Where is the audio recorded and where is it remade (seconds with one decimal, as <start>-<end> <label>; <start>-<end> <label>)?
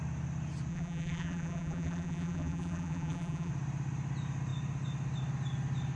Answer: 0.0-0.7 recorded; 0.7-3.5 remade; 3.5-6.0 recorded